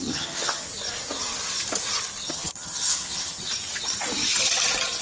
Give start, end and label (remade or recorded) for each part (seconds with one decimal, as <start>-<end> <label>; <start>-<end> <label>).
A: 0.0-0.7 remade; 0.7-2.3 recorded; 2.3-3.4 remade; 3.4-5.0 recorded

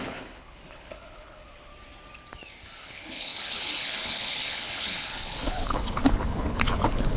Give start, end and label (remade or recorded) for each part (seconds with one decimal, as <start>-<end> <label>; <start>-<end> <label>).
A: 0.0-1.7 remade; 1.7-2.8 recorded; 2.8-7.2 remade

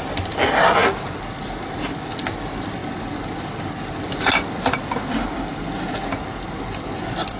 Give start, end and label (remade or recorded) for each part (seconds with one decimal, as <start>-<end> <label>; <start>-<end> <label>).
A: 0.0-7.4 recorded

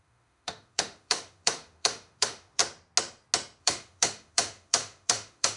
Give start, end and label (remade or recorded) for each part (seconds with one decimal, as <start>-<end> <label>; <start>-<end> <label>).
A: 0.0-2.6 remade; 2.6-3.6 recorded; 3.6-5.6 remade

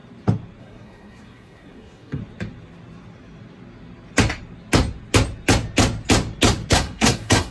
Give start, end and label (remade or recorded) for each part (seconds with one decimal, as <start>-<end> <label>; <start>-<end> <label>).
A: 0.0-0.6 recorded; 0.6-2.2 remade; 2.2-6.7 recorded; 6.7-7.5 remade

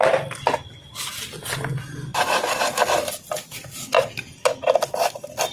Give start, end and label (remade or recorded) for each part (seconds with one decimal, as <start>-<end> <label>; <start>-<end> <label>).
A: 0.0-5.5 recorded

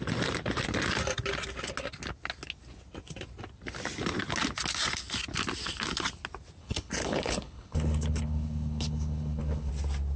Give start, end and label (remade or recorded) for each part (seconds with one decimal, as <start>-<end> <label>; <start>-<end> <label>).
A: 0.0-6.6 recorded; 6.6-9.7 remade; 9.7-10.2 recorded

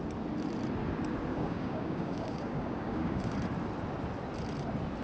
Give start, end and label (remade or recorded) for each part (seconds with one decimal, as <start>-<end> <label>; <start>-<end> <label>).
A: 0.0-1.3 recorded; 1.3-3.3 remade; 3.3-5.0 recorded